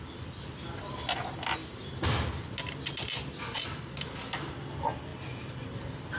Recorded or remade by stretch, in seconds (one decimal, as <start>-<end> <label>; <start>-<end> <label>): 0.0-6.2 recorded